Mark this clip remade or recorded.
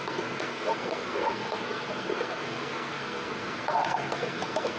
remade